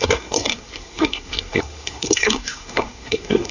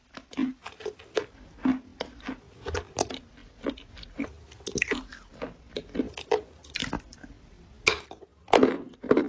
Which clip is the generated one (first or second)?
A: first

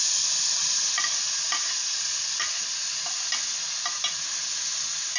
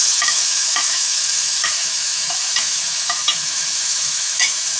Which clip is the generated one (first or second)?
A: second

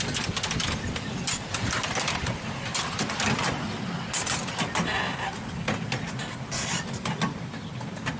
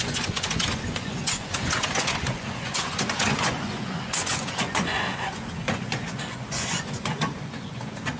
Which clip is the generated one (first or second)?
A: second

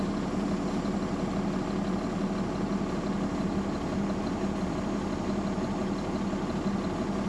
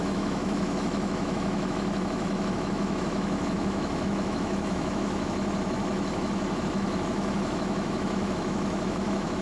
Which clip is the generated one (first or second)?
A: second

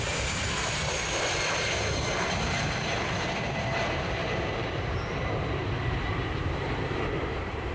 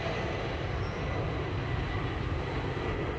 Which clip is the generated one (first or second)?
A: first